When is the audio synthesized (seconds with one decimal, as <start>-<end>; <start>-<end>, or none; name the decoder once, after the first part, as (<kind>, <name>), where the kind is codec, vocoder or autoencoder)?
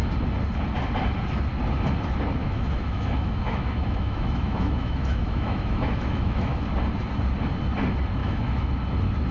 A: 2.4-6.6 (autoencoder, DAC-VAE); 8.2-8.7